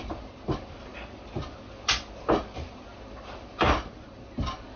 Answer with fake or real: real